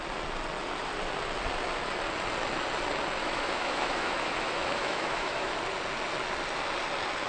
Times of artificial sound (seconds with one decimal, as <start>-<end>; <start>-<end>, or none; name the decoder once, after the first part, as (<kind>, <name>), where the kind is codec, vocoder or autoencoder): 3.2-5.5 (autoencoder, DAC-VAE)